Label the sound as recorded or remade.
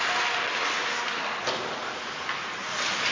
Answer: recorded